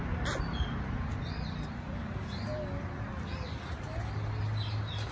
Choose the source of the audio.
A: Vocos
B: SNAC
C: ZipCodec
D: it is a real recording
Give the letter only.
D